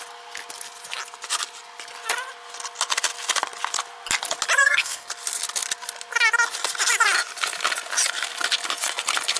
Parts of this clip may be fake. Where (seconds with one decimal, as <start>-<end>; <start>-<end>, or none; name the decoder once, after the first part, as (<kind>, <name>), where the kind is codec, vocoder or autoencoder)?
4.6-5.1 (codec, SNAC)